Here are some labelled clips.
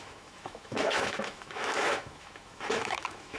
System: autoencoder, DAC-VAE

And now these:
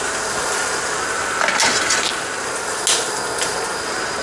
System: none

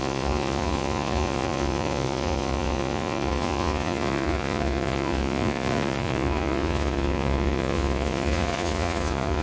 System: vocoder, Vocos